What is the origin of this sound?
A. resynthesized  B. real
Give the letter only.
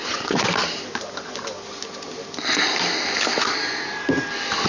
B